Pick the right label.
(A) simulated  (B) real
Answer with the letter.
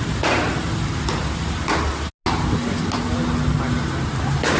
B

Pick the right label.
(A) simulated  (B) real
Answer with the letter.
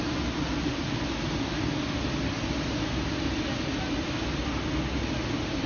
B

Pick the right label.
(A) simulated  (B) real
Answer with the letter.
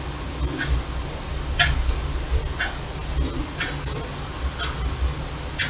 B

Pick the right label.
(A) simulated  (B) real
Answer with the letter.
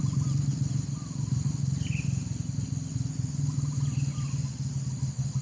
B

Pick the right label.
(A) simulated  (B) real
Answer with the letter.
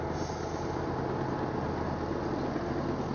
B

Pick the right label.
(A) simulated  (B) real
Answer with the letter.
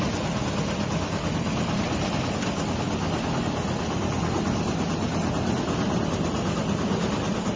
B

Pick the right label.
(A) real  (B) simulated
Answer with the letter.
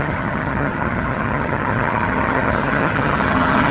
B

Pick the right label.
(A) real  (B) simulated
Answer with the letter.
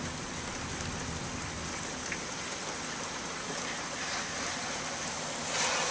A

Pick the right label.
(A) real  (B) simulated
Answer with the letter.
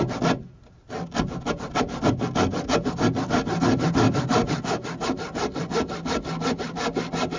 A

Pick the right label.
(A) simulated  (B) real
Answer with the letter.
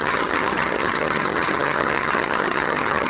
A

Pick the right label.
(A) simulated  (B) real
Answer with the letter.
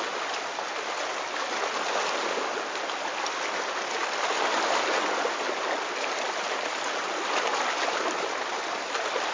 B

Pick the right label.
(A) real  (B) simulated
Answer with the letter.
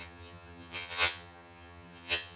B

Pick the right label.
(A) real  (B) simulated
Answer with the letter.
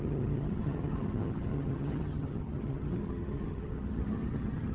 B